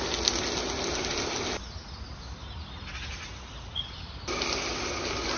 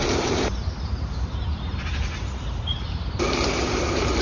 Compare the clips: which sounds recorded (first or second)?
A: first